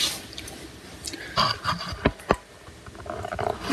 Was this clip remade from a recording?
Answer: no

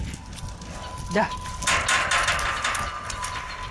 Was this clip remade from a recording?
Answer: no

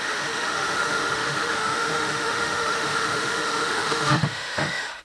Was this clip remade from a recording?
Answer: yes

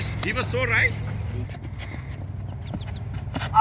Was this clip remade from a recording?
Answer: no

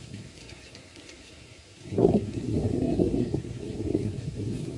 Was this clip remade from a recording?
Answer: yes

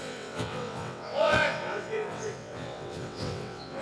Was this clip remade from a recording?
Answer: yes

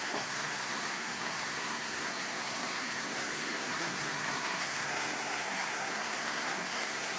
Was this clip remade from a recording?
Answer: yes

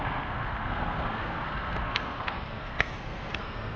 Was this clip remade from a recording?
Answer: yes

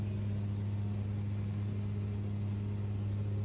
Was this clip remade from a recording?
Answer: no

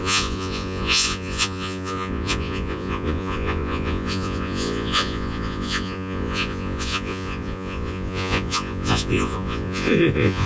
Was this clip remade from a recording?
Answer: yes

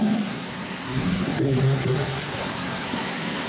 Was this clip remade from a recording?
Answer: yes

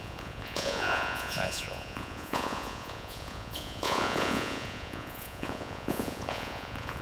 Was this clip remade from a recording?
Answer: yes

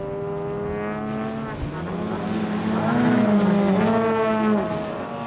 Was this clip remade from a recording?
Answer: no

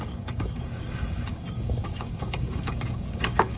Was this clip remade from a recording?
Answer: yes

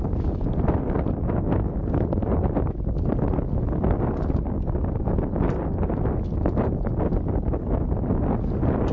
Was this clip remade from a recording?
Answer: no